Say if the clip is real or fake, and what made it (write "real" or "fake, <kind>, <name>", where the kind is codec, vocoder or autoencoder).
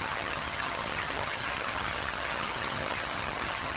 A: fake, vocoder, HiFi-GAN